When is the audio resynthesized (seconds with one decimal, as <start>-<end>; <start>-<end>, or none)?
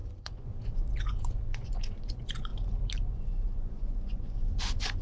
0.0-2.5; 3.1-5.0